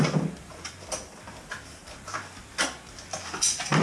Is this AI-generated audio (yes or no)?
no